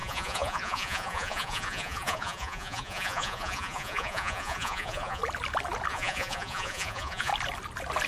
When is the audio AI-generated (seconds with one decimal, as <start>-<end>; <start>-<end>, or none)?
0.0-5.2; 5.9-7.3